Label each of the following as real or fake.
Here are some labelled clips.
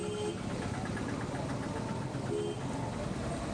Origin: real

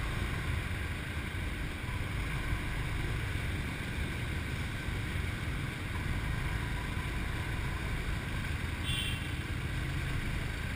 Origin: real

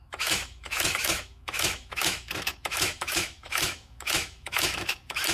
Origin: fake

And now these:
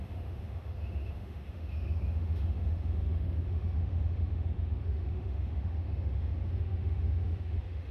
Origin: fake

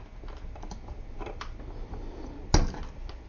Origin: real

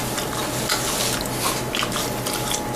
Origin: real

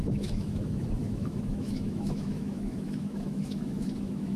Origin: fake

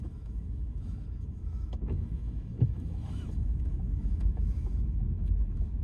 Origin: fake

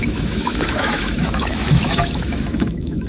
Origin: fake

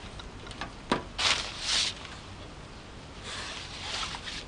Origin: real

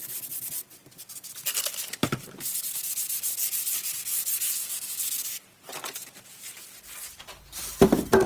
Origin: real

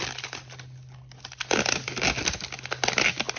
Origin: real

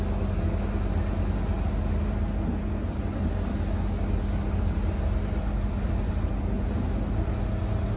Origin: real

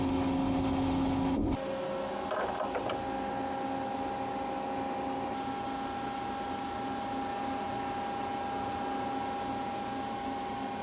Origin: real